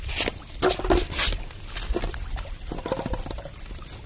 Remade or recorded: remade